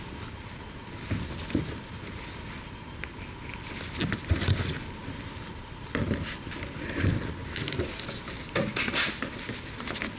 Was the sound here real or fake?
real